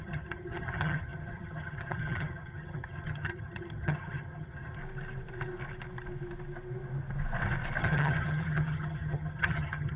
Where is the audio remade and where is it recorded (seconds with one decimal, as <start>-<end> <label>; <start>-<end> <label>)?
0.0-4.8 remade; 4.8-7.8 recorded; 7.8-10.0 remade